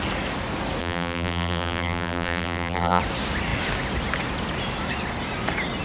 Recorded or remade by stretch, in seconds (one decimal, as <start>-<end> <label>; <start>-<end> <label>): 0.0-0.8 recorded; 0.8-3.0 remade; 3.0-5.8 recorded